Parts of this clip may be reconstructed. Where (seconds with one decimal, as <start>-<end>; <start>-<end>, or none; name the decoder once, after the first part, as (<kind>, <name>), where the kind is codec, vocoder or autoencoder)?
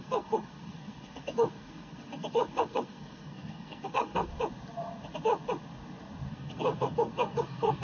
0.0-4.3 (codec, SNAC); 6.3-7.8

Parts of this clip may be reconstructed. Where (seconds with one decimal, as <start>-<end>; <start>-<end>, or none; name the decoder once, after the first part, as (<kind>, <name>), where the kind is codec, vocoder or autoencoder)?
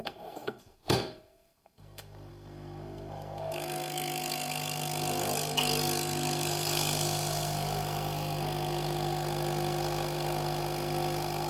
0.0-11.5 (codec, SNAC)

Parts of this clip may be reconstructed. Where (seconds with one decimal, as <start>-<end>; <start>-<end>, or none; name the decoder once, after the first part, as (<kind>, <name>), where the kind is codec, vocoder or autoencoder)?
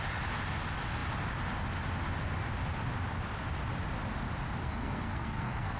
4.6-5.8 (codec, SNAC)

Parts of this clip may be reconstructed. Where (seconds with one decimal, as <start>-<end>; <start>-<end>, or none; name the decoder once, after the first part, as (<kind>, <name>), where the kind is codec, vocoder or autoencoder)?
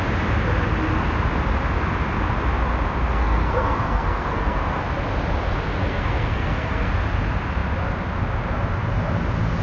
3.0-4.8 (codec, SNAC); 5.8-6.9